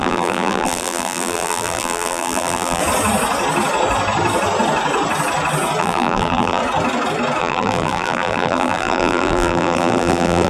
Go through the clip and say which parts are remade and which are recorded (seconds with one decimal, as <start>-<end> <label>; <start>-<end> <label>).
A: 0.0-2.8 remade; 2.8-5.8 recorded; 5.8-6.6 remade; 6.6-7.4 recorded; 7.4-10.5 remade